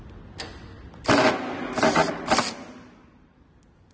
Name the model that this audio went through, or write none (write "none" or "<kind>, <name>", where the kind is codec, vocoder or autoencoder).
none